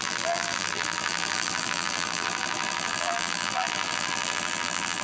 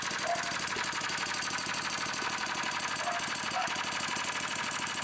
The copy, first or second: first